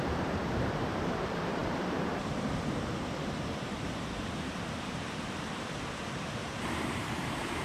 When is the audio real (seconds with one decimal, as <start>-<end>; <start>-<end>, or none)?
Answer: none